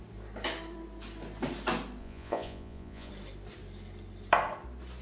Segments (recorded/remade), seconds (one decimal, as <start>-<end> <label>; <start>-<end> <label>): 0.0-2.0 recorded; 2.0-3.1 remade; 3.1-5.0 recorded